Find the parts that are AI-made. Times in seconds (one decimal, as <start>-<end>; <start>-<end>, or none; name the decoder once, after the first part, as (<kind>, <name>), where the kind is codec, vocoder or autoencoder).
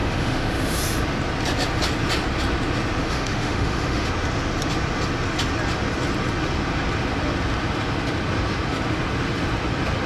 0.0-0.8 (autoencoder, DAC-VAE); 3.0-4.1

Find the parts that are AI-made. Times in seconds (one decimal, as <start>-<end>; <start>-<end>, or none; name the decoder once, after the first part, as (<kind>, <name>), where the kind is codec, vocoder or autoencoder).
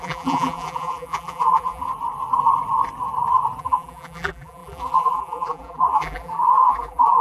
0.0-1.9 (vocoder, BigVGAN v2); 3.6-7.2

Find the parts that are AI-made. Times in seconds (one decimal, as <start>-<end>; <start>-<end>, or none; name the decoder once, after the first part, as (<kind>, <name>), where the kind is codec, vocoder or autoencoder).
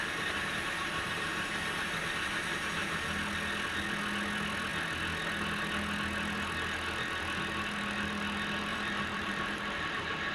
1.1-1.8 (vocoder, BigVGAN v2); 8.7-10.3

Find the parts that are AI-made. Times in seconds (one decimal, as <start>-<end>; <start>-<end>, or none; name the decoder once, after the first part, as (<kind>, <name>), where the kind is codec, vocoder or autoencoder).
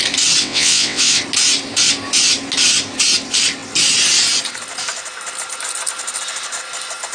0.4-1.2 (vocoder, WaveNeXt)